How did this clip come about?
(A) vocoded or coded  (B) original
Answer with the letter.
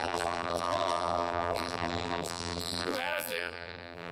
A